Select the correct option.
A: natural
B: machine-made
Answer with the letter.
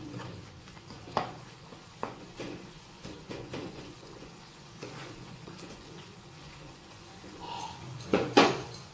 B